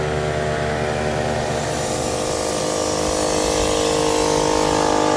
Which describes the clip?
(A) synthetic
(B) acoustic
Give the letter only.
B